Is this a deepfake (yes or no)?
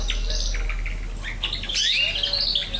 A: no